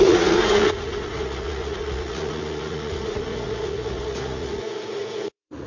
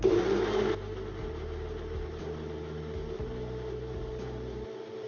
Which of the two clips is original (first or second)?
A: second